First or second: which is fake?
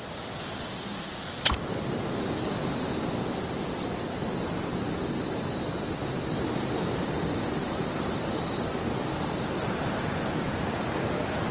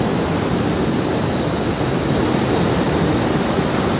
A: first